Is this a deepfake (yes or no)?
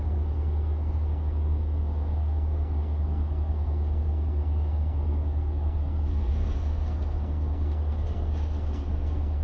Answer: yes